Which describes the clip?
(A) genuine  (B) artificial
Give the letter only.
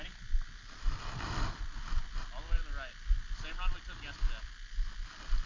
A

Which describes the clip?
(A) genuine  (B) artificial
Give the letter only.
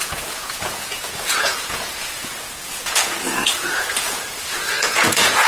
B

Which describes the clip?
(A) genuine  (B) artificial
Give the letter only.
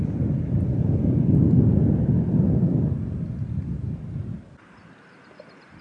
A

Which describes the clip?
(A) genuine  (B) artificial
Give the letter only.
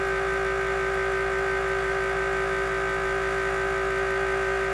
A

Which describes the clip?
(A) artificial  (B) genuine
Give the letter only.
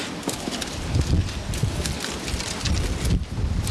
B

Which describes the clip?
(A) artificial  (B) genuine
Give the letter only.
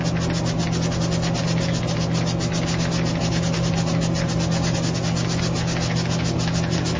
B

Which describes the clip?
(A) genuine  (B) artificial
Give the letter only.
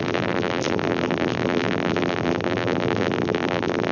B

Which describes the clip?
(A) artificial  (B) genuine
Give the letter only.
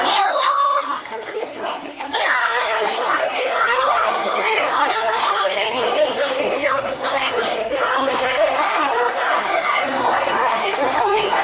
A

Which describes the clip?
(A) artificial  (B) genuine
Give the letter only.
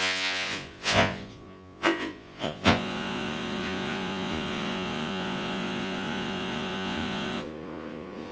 A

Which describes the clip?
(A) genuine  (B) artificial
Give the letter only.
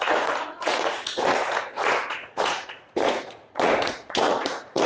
B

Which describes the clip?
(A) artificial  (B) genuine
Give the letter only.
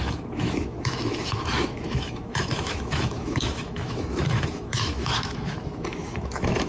A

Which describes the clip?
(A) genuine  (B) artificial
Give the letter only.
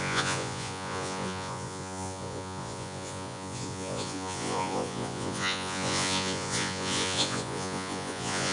B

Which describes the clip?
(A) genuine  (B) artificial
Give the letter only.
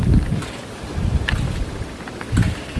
A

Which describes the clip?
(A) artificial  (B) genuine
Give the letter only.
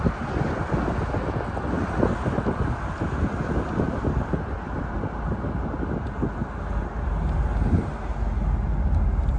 B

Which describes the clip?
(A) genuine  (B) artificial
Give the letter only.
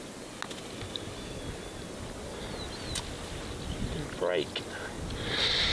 A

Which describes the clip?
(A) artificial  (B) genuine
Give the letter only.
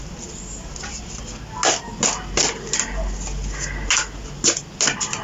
B